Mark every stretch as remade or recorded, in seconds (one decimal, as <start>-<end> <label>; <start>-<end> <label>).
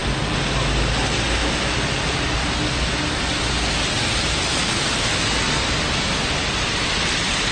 0.0-7.5 recorded